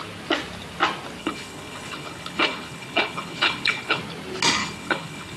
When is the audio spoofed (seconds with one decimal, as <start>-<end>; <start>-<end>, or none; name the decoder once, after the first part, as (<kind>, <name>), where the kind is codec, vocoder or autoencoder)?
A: 1.2-4.0 (codec, HILCodec); 4.6-5.4